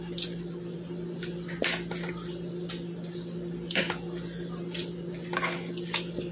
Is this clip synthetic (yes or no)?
no